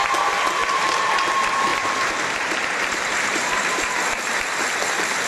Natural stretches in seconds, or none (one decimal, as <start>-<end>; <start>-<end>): 0.0-0.6; 1.1-1.7

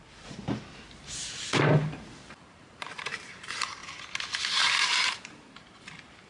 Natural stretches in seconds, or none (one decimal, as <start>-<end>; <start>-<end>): 0.4-1.4; 3.8-4.5

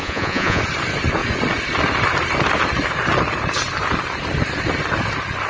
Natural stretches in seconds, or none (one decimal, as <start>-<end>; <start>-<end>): 0.6-5.5